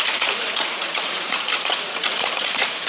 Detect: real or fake fake